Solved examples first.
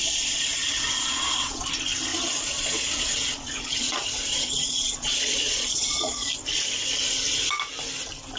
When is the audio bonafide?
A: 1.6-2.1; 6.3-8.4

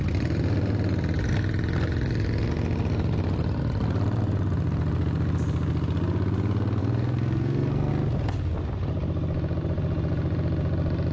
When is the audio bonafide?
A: 0.0-6.8; 7.9-11.1

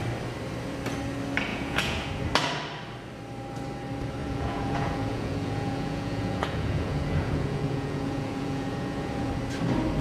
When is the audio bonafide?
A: 0.0-1.5; 2.1-4.2; 9.3-10.0

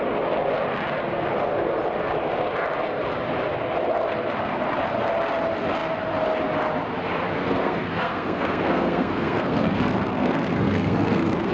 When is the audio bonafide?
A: 0.0-7.4

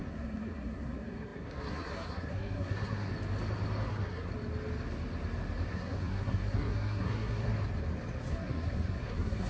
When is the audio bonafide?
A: 3.1-3.9; 4.3-5.7; 7.5-8.3

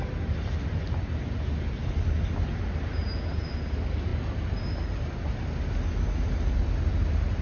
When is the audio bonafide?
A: 0.0-7.4